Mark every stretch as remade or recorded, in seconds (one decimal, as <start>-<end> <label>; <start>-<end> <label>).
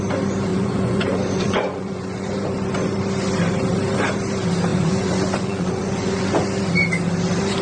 0.0-0.5 recorded; 0.5-2.3 remade; 2.3-4.7 recorded; 4.7-6.3 remade; 6.3-7.6 recorded